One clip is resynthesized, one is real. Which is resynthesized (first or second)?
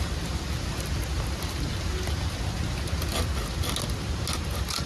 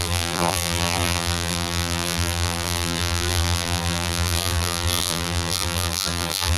second